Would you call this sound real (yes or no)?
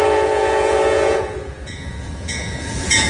no